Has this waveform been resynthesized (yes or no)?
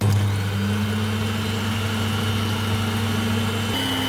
no